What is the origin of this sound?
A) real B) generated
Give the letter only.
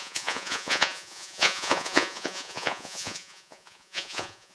B